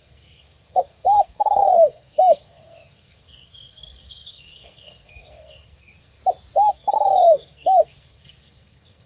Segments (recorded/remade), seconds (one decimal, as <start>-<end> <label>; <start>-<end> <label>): 0.0-6.2 remade; 6.2-6.7 recorded; 6.7-9.1 remade